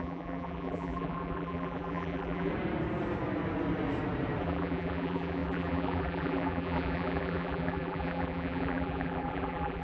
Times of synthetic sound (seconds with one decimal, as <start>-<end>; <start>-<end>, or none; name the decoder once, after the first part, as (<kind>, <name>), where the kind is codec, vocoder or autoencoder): 0.0-2.5 (vocoder, BigVGAN v2); 4.4-9.8